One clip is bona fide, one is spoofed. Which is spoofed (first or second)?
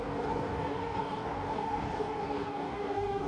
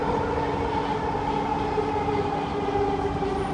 first